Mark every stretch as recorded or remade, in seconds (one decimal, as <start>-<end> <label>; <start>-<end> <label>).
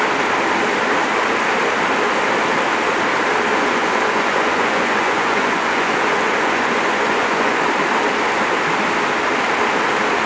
0.0-3.5 recorded; 3.5-7.6 remade; 7.6-10.3 recorded